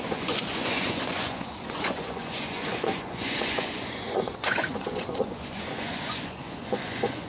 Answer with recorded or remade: remade